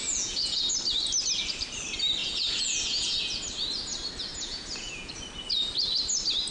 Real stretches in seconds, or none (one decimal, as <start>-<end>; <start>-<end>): 0.7-2.2; 3.4-4.3; 5.1-6.5